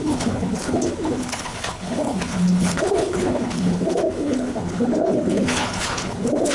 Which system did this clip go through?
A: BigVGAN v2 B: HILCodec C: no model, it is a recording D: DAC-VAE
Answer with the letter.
B